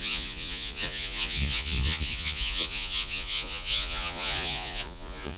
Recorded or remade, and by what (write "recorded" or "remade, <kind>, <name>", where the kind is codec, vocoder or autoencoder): remade, vocoder, Vocos